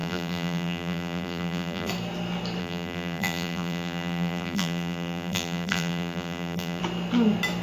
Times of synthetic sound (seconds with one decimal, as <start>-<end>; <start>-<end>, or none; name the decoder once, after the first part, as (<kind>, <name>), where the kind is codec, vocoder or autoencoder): 0.0-1.9 (vocoder, BigVGAN v2); 2.6-6.8